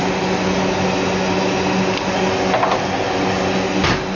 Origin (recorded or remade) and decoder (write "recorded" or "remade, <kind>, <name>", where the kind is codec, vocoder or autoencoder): recorded